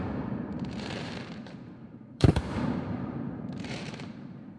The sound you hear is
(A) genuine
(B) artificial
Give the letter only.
B